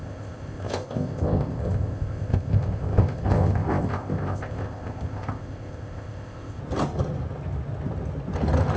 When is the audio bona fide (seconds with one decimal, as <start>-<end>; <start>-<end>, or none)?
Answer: 6.6-8.8